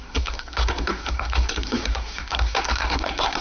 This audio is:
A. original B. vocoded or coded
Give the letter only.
B